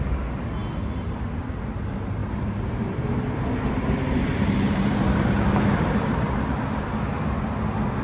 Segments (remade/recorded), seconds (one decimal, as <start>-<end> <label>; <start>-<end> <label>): 0.0-2.2 recorded; 2.2-6.4 remade; 6.4-8.0 recorded